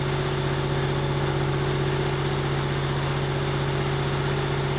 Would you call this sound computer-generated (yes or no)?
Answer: no